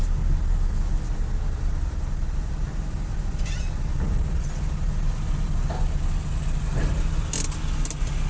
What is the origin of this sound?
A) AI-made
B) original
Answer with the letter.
B